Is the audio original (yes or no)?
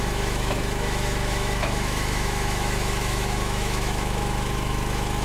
no